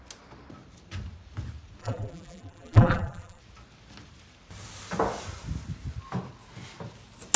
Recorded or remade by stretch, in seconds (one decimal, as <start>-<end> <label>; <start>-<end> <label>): 0.0-1.8 recorded; 1.8-3.4 remade; 3.4-7.4 recorded